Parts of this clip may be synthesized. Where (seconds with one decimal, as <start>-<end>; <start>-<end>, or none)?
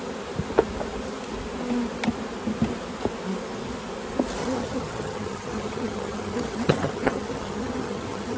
4.4-8.4